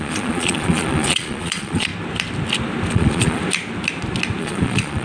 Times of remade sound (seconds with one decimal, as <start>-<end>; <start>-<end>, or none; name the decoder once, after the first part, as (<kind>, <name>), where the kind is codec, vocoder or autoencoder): 0.0-1.9 (vocoder, Vocos); 2.9-3.4; 4.4-5.0